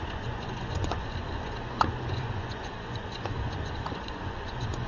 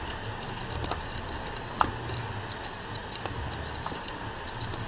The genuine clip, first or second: second